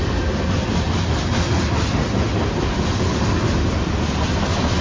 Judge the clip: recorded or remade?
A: recorded